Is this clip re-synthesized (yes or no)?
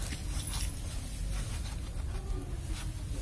no